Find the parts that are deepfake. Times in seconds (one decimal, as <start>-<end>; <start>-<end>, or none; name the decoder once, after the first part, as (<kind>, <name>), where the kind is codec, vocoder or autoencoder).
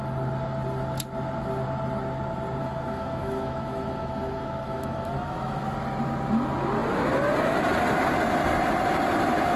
2.6-5.6 (autoencoder, DAC-VAE)